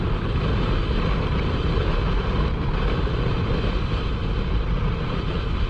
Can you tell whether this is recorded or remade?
recorded